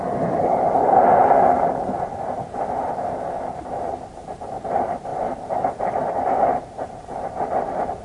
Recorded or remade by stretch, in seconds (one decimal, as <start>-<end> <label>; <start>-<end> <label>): 0.0-8.0 remade

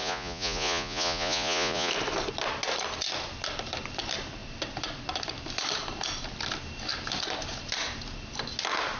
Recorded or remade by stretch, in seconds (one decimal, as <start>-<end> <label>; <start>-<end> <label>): 0.0-1.9 remade; 1.9-9.0 recorded

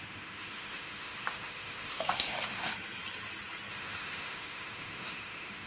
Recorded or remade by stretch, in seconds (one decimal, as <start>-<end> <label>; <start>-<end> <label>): 0.0-2.7 remade; 2.7-3.7 recorded; 3.7-5.7 remade

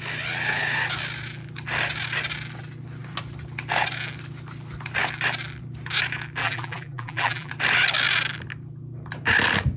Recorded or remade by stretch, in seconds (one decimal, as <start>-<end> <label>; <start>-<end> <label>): 0.0-6.4 recorded; 6.4-7.5 remade; 7.5-9.8 recorded

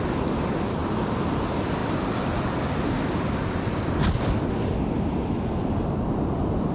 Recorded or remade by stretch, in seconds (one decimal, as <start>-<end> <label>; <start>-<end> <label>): 0.0-6.7 recorded

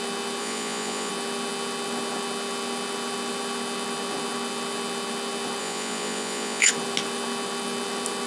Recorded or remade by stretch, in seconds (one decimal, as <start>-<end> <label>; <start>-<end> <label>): 0.0-0.4 recorded; 0.4-1.1 remade; 1.1-5.6 recorded; 5.6-6.7 remade; 6.7-8.3 recorded